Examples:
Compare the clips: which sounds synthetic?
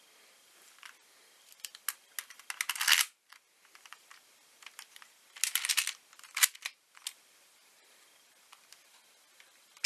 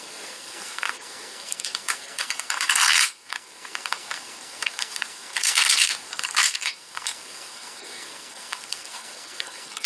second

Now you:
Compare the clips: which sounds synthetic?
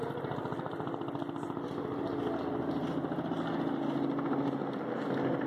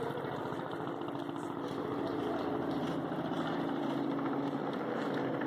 second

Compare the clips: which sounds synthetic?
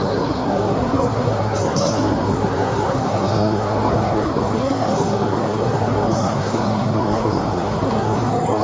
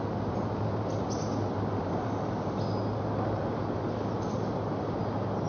first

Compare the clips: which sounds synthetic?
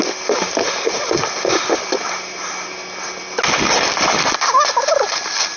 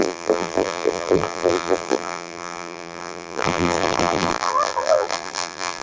second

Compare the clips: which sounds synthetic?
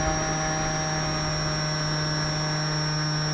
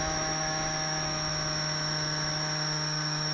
second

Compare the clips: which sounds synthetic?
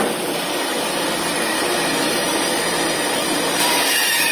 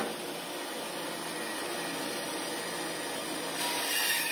first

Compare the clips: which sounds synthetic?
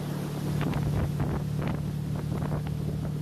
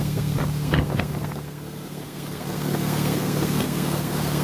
second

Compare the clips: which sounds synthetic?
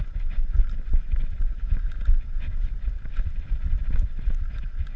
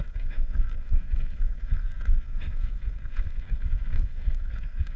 second